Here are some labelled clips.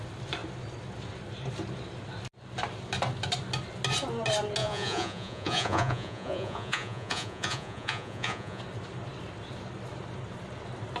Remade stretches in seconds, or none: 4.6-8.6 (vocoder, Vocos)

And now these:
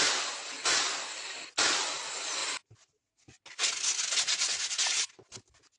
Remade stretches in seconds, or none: none

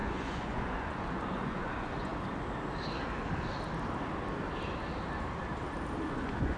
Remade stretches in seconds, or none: 0.0-2.1 (vocoder, Vocos); 6.1-6.6

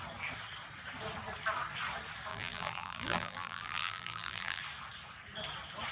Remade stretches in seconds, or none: 2.3-4.6 (vocoder, BigVGAN v2)

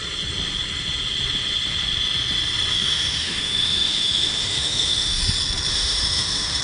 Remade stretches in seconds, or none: 2.7-5.2 (autoencoder, DAC-VAE); 5.7-6.6

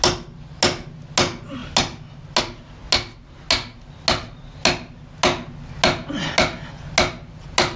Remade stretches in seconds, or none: none

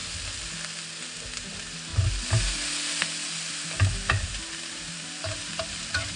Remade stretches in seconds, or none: 1.5-1.9 (vocoder, BigVGAN v2); 4.2-6.2

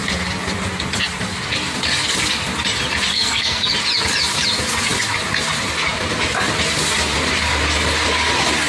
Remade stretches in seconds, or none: 3.1-3.7 (codec, SNAC)